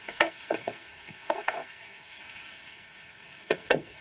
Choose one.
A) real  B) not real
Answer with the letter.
B